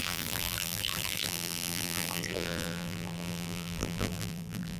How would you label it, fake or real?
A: fake